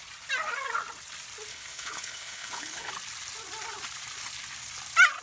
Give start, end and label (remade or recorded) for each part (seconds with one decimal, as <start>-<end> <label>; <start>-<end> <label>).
0.0-1.5 recorded; 1.5-2.9 remade; 2.9-5.2 recorded